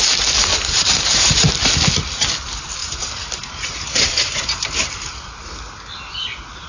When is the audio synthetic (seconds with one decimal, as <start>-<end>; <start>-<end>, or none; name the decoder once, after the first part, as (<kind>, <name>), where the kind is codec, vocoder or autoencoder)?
0.5-1.5 (vocoder, BigVGAN v2); 2.8-4.9